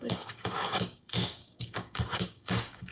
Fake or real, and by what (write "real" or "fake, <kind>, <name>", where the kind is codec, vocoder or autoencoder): fake, codec, DAC